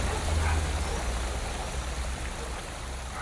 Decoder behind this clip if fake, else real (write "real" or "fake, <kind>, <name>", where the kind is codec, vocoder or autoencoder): real